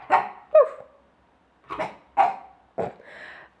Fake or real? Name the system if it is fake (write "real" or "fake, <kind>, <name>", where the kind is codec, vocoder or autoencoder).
real